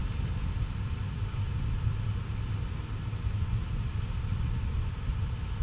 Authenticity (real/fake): real